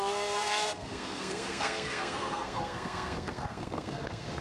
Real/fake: fake